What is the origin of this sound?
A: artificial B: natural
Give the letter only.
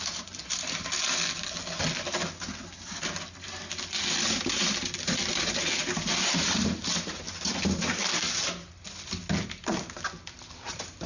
B